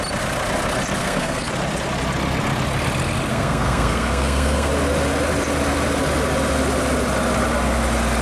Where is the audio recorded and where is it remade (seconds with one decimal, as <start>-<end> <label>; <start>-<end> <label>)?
0.0-1.0 recorded; 1.0-1.5 remade; 1.5-3.3 recorded; 3.3-4.7 remade; 4.7-8.2 recorded